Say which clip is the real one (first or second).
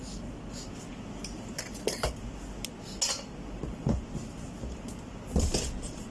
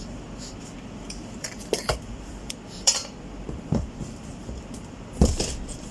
first